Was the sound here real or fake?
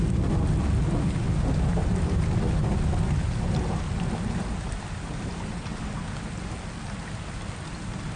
real